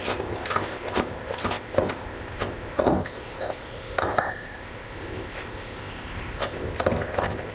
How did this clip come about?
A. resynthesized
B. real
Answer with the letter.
A